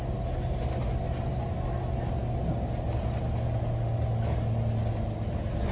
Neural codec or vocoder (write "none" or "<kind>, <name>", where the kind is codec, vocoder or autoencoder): none